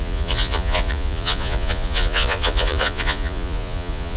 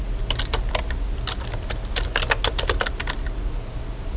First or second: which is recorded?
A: second